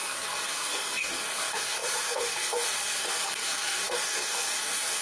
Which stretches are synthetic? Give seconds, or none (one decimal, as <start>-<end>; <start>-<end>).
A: 0.0-5.0